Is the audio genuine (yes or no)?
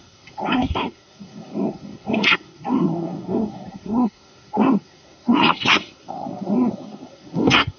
no